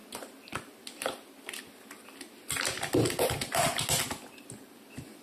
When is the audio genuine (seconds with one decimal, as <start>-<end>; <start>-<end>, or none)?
0.0-5.2